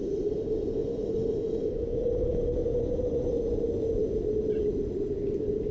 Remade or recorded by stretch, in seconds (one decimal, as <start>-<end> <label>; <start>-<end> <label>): 0.0-0.8 recorded; 0.8-2.1 remade; 2.1-2.6 recorded; 2.6-3.3 remade; 3.3-5.7 recorded